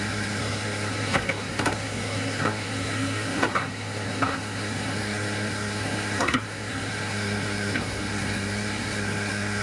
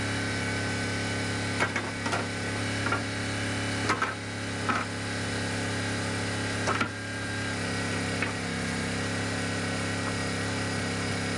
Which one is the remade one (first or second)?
first